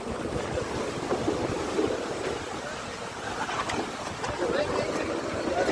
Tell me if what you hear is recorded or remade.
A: recorded